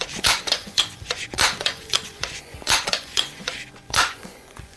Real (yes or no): no